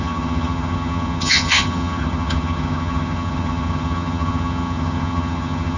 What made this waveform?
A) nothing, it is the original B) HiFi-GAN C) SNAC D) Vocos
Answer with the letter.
B